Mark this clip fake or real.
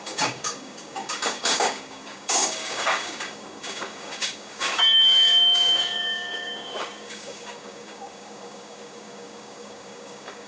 fake